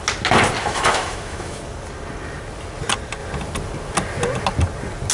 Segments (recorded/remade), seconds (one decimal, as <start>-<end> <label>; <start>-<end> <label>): 0.0-0.6 recorded; 0.6-1.6 remade; 1.6-5.1 recorded